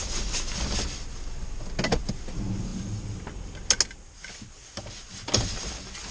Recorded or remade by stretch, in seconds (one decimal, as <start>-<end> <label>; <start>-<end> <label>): 0.0-6.1 recorded

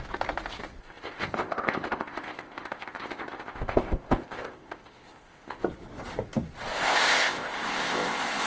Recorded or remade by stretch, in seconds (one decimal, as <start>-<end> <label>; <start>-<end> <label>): 0.0-0.8 recorded; 0.8-5.6 remade; 5.6-6.7 recorded; 6.7-8.5 remade

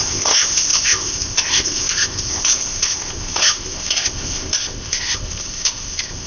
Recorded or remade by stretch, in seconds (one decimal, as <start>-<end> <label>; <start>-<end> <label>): 0.0-6.3 remade

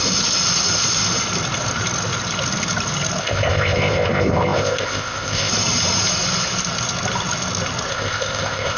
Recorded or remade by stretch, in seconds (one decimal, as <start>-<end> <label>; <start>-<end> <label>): 0.0-3.2 recorded; 3.2-5.5 remade; 5.5-7.9 recorded; 7.9-8.8 remade

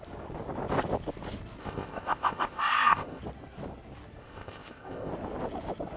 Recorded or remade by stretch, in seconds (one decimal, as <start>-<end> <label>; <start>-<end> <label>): 0.0-1.6 recorded; 1.6-3.2 remade; 3.2-4.2 recorded; 4.2-5.1 remade; 5.1-6.0 recorded